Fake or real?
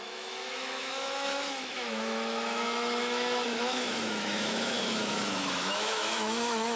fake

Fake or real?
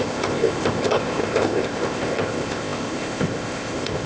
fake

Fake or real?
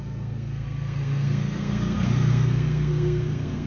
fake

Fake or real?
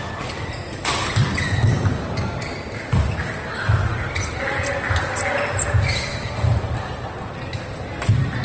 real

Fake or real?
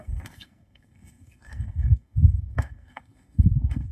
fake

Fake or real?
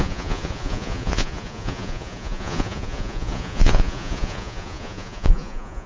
fake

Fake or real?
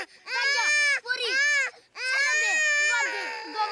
real